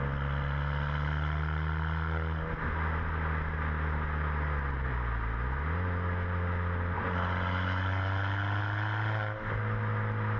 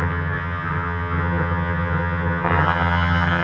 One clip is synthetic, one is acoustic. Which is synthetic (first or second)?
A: second